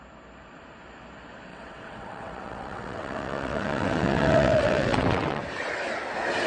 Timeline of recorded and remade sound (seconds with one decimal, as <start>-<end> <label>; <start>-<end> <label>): 0.0-1.5 recorded; 1.5-5.4 remade; 5.4-6.5 recorded

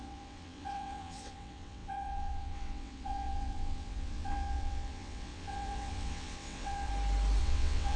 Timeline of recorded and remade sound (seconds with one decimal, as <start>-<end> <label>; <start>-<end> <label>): 0.0-6.9 remade; 6.9-7.4 recorded; 7.4-8.0 remade

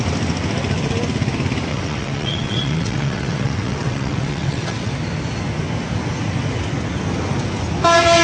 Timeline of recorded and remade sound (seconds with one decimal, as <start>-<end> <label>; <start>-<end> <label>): 0.0-1.7 recorded; 1.7-4.9 remade; 4.9-8.2 recorded

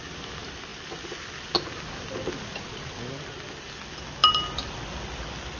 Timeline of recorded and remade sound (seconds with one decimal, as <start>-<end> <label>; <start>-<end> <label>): 0.0-5.6 recorded

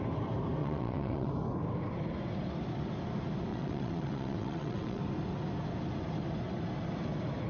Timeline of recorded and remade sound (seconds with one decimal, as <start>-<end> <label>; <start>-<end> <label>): 0.0-0.6 recorded; 0.6-1.3 remade; 1.3-3.5 recorded; 3.5-5.0 remade; 5.0-7.5 recorded